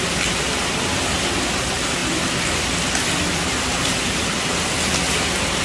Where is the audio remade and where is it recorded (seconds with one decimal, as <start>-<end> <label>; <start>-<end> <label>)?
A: 0.0-5.6 recorded